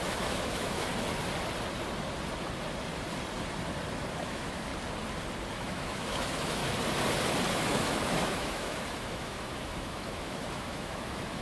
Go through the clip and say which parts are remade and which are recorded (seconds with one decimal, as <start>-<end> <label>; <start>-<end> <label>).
0.0-0.9 remade; 0.9-4.2 recorded; 4.2-4.7 remade; 4.7-5.5 recorded; 5.5-6.6 remade; 6.6-7.5 recorded; 7.5-11.4 remade